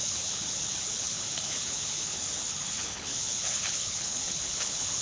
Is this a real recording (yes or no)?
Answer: no